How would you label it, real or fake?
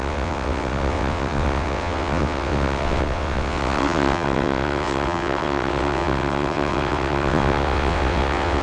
fake